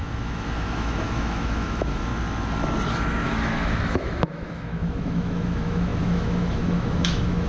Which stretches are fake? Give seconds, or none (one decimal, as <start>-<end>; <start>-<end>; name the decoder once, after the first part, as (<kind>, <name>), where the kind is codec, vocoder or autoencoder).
0.0-2.1 (autoencoder, DAC-VAE); 2.9-7.5